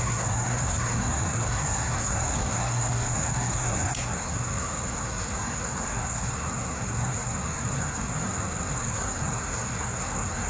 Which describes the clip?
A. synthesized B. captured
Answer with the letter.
A